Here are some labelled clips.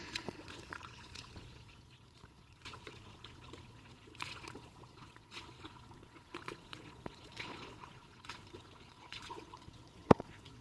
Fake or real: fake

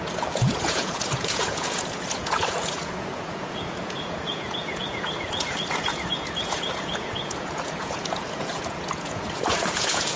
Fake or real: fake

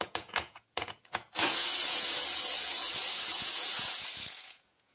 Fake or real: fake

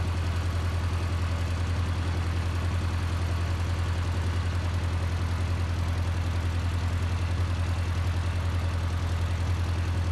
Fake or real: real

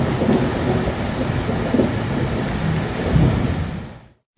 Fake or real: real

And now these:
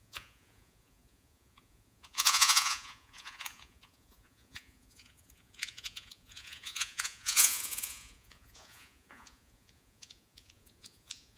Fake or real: fake